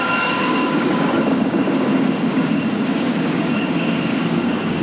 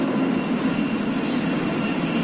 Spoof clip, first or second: first